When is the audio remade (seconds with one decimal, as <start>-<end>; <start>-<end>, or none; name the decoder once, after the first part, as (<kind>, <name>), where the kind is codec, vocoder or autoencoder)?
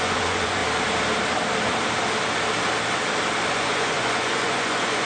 0.0-0.6 (vocoder, Vocos); 3.5-5.1